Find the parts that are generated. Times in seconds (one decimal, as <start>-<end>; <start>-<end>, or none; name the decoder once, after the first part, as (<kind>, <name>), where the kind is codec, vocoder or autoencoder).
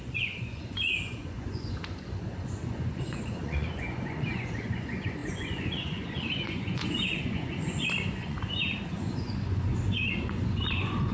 0.0-11.1 (vocoder, Vocos)